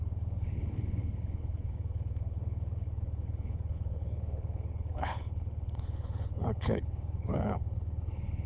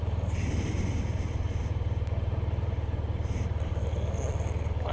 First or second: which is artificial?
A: first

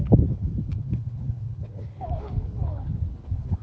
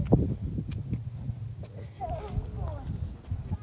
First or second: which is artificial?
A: first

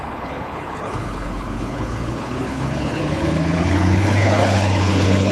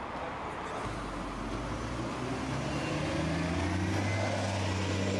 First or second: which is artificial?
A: first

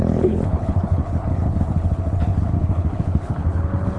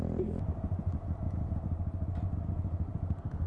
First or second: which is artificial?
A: first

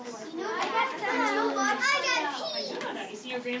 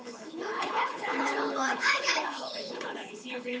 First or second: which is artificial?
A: second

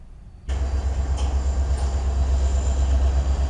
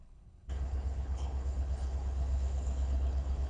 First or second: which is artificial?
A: second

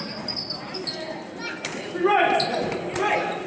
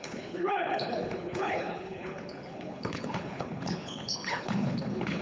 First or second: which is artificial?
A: second